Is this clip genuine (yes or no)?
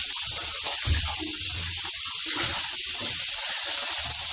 yes